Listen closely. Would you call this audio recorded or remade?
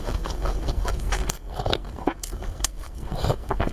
remade